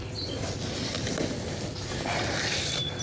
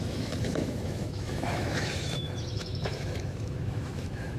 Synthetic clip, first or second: second